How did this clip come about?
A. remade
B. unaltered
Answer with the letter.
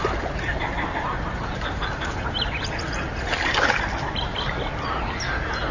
B